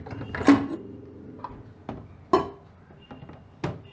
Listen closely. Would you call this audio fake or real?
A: real